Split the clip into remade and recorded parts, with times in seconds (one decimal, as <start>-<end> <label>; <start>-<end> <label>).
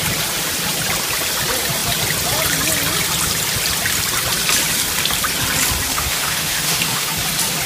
0.0-5.9 recorded; 5.9-7.1 remade; 7.1-7.7 recorded